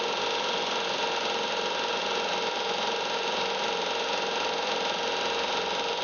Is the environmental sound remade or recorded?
recorded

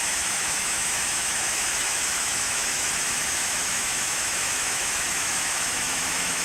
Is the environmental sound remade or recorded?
remade